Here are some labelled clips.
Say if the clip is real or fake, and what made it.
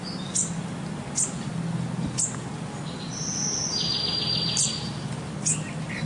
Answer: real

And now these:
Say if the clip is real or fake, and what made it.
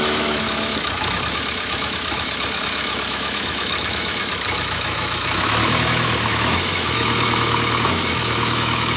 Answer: fake, autoencoder, DAC-VAE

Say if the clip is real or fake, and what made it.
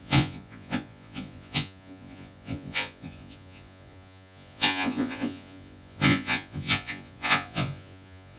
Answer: fake, vocoder, Vocos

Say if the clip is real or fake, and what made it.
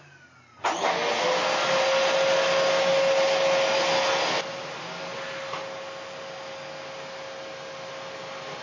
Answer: real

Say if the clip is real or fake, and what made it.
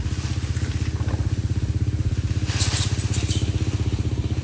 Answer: real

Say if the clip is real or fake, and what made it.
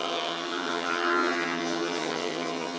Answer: fake, vocoder, HiFi-GAN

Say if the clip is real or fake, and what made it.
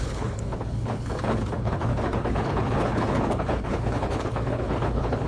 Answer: fake, codec, HILCodec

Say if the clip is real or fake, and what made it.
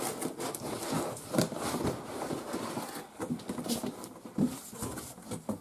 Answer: real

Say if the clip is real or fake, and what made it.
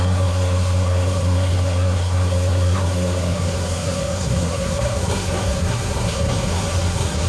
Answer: fake, codec, SNAC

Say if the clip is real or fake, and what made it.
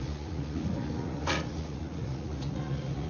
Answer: fake, vocoder, Vocos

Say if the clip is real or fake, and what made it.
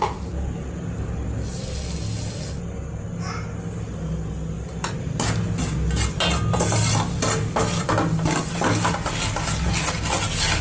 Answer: real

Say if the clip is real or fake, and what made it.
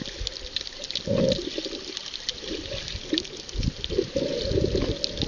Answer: real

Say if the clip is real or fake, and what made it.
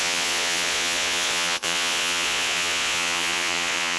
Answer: fake, vocoder, Vocos